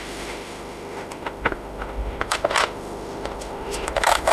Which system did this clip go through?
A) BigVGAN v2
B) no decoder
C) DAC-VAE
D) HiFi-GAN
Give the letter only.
C